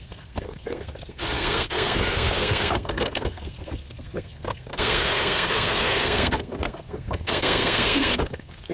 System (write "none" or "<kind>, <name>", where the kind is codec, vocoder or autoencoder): codec, SNAC